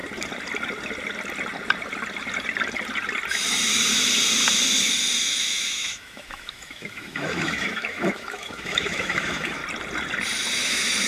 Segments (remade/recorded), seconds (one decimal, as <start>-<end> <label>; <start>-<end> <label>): 0.0-5.2 recorded; 5.2-9.6 remade; 9.6-10.6 recorded; 10.6-11.1 remade